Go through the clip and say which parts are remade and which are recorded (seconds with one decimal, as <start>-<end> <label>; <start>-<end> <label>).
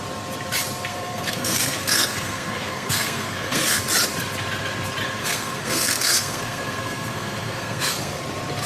0.0-0.9 recorded; 0.9-3.8 remade; 3.8-5.2 recorded; 5.2-8.2 remade; 8.2-8.7 recorded